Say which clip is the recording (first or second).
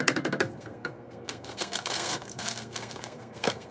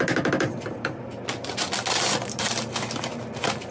second